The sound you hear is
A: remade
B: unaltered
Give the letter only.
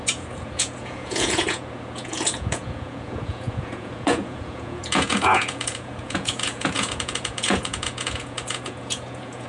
A